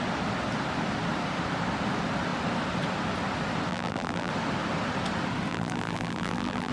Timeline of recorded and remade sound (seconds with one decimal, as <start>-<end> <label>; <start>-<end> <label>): 0.0-3.7 recorded; 3.7-4.3 remade; 4.3-5.5 recorded; 5.5-6.7 remade